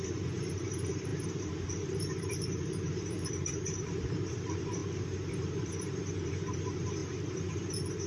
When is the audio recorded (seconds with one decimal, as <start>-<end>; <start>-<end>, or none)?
none

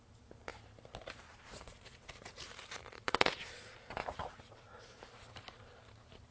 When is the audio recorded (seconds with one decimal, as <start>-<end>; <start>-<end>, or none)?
0.5-1.1

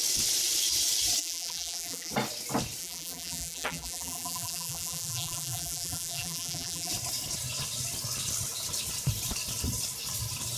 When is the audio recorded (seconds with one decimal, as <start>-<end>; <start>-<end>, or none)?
0.0-1.2; 2.1-2.8; 6.9-10.6

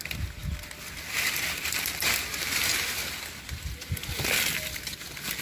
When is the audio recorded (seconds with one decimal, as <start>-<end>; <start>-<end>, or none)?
0.0-5.4

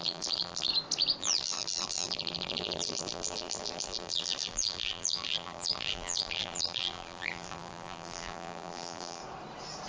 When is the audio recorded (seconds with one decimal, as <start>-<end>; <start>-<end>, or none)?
0.7-1.2; 9.2-9.9

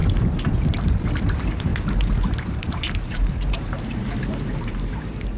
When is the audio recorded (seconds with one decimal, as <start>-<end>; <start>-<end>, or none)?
0.0-1.2; 1.7-2.2